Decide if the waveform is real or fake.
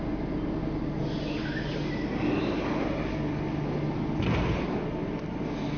real